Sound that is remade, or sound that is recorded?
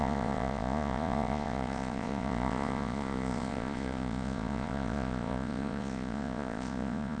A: remade